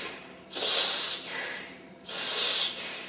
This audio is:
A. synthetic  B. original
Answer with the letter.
A